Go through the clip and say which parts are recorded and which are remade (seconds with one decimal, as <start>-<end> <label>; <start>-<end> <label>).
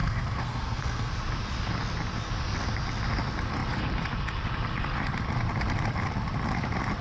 0.0-1.1 remade; 1.1-7.0 recorded